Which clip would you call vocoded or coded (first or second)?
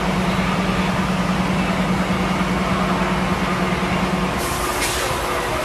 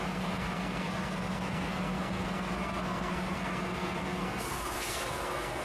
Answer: second